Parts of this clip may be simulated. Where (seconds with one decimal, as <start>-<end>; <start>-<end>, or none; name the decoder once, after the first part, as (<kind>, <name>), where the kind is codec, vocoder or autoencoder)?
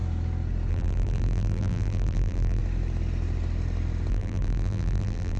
0.7-2.6 (vocoder, BigVGAN v2); 4.1-5.4